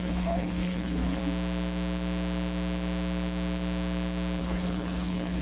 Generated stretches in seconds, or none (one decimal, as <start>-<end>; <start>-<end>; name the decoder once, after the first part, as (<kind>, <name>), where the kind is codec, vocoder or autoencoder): 0.0-1.2 (codec, HILCodec); 4.4-5.4